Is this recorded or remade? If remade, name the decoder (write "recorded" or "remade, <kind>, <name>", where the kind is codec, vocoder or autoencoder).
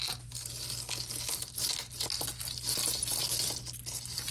recorded